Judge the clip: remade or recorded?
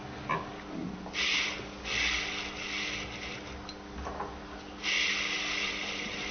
recorded